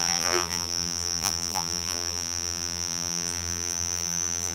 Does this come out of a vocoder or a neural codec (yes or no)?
yes